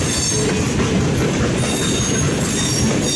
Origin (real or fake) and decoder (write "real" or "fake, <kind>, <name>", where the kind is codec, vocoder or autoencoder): real